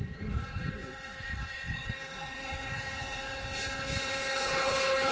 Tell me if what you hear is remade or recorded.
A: remade